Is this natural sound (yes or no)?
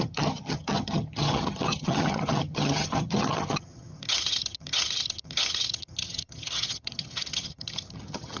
no